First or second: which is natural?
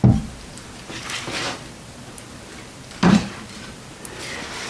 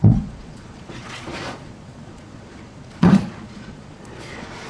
first